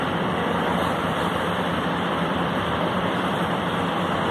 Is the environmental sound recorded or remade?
remade